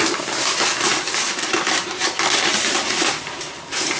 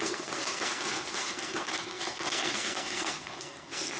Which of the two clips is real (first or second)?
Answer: first